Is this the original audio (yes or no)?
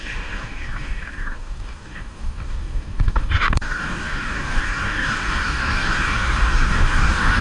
no